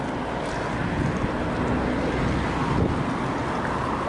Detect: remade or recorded recorded